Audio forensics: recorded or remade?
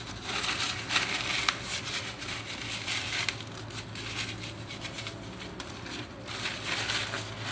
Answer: recorded